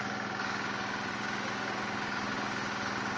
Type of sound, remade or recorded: remade